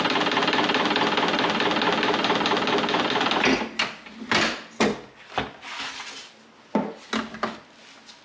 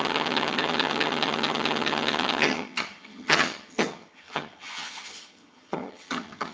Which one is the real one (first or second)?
first